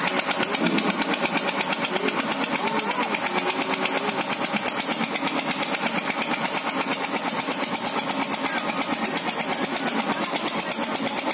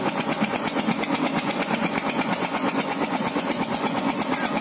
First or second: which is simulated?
second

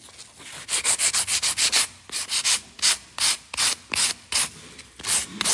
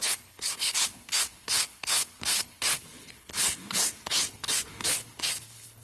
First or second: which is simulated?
second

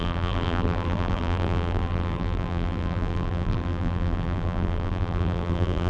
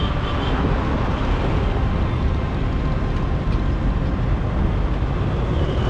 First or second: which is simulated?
first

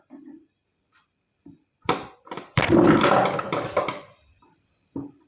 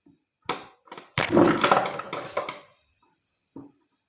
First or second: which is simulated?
first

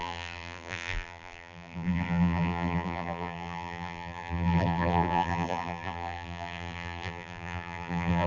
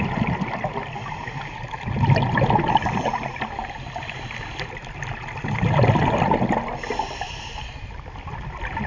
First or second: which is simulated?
first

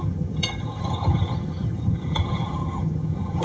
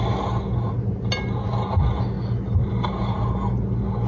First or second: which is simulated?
first